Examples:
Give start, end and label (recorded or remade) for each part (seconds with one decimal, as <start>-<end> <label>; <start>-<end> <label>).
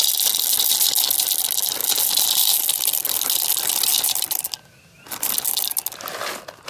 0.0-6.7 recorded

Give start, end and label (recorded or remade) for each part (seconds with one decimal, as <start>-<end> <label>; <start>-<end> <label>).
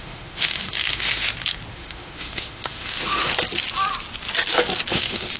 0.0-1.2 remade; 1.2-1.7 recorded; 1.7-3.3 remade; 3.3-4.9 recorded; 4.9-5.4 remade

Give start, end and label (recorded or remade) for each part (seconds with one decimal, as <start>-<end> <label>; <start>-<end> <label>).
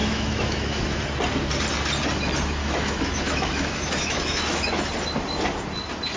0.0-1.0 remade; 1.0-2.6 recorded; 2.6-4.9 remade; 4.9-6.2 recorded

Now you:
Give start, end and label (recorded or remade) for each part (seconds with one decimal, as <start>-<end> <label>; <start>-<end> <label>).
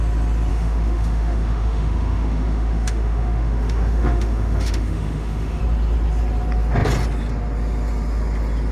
0.0-0.5 recorded; 0.5-5.6 remade; 5.6-8.7 recorded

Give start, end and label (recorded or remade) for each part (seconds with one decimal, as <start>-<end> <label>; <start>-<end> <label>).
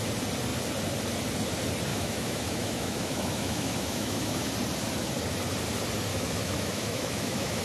0.0-1.9 recorded; 1.9-4.5 remade; 4.5-6.1 recorded; 6.1-7.6 remade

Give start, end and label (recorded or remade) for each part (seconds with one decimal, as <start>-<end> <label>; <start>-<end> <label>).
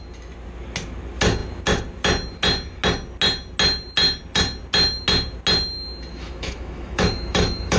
0.0-6.1 recorded; 6.1-7.8 remade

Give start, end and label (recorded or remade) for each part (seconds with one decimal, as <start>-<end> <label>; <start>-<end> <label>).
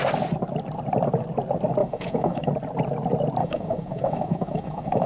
0.0-1.8 recorded; 1.8-2.5 remade; 2.5-3.4 recorded; 3.4-5.1 remade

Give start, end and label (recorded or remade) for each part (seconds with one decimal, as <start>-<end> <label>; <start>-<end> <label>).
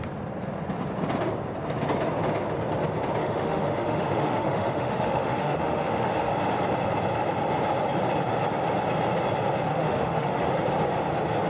0.0-3.2 recorded; 3.2-6.3 remade; 6.3-9.7 recorded; 9.7-10.5 remade; 10.5-11.5 recorded